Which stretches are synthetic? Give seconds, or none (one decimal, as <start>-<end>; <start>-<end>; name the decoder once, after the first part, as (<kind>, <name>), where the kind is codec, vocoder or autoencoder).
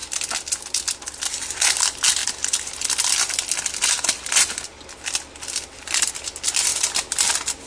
2.2-6.1 (vocoder, BigVGAN v2); 6.7-7.7